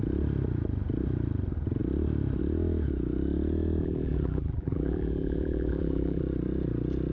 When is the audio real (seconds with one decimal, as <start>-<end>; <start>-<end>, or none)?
0.0-3.8; 6.2-7.1